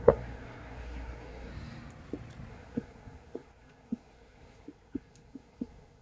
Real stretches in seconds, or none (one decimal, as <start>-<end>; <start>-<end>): 1.5-2.5